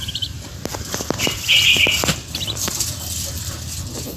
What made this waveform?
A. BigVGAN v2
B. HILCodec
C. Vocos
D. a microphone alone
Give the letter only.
A